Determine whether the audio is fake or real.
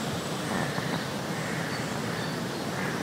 fake